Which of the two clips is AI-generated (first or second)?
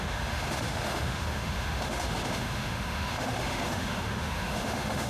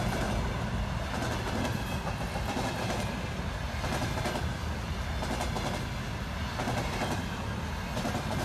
first